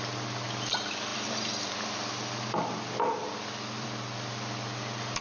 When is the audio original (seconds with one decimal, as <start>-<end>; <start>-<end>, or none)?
0.0-1.1; 1.7-3.2; 4.3-5.2